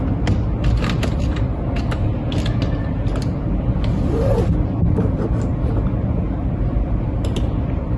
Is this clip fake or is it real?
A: real